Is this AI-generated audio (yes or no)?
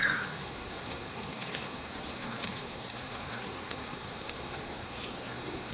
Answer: yes